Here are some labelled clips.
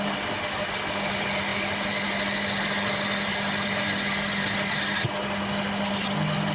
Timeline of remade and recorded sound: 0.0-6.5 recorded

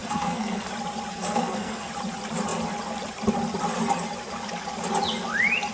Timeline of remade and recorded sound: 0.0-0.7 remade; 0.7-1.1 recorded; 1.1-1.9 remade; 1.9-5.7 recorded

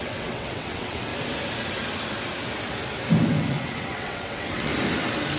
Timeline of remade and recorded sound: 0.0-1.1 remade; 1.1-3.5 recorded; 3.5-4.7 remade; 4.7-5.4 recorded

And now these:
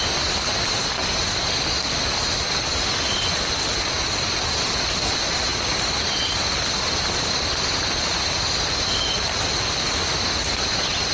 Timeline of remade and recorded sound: 0.0-11.1 recorded